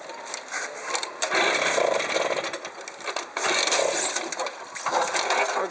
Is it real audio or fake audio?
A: real